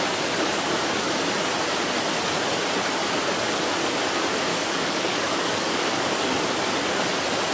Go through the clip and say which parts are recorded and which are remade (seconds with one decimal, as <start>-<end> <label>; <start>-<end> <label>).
0.0-4.5 recorded; 4.5-6.4 remade; 6.4-7.5 recorded

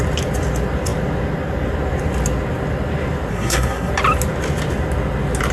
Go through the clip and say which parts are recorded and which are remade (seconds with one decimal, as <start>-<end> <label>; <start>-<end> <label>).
0.0-3.3 recorded; 3.3-3.9 remade; 3.9-5.5 recorded

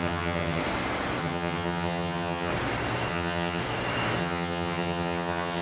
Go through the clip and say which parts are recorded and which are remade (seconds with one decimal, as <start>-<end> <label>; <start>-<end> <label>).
0.0-0.6 remade; 0.6-1.2 recorded; 1.2-2.5 remade; 2.5-3.1 recorded; 3.1-3.6 remade; 3.6-4.2 recorded; 4.2-5.6 remade